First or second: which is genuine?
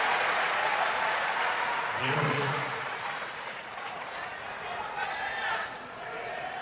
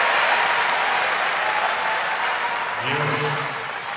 second